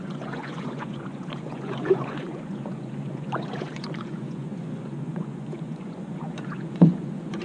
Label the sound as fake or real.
fake